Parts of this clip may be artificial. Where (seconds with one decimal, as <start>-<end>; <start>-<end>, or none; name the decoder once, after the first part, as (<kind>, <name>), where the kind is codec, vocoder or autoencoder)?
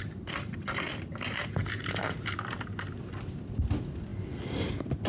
0.0-1.6 (vocoder, BigVGAN v2); 2.5-5.1